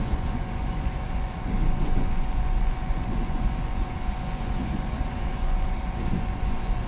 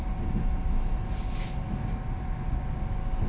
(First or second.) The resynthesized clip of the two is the first